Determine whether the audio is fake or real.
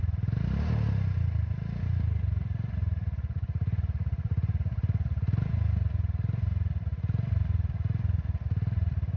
real